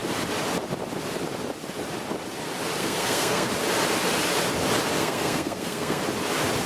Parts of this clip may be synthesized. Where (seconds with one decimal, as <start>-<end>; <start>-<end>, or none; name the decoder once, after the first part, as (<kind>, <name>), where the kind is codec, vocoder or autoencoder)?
2.8-3.5 (codec, SNAC); 5.0-6.0